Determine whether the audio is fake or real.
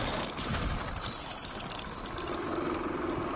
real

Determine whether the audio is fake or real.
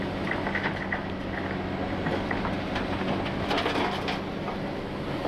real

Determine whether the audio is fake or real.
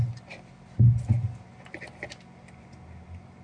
real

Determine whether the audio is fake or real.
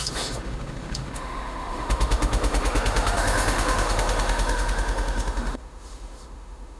fake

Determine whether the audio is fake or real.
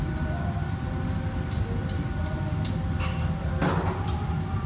real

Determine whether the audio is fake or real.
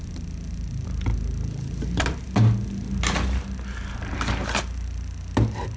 real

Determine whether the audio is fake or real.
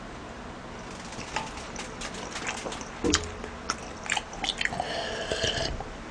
real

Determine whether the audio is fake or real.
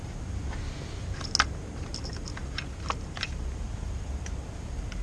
real